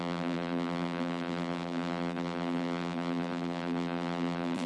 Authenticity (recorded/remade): remade